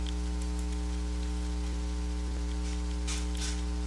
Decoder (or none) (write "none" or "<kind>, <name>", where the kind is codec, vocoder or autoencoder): none